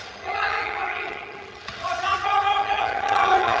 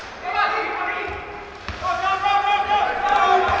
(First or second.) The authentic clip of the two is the second